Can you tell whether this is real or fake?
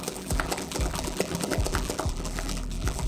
fake